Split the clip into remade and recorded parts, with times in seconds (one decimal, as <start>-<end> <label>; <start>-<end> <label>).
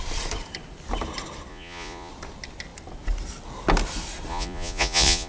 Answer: 0.0-1.5 recorded; 1.5-2.1 remade; 2.1-4.3 recorded; 4.3-5.3 remade